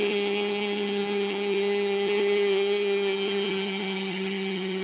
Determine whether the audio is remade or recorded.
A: remade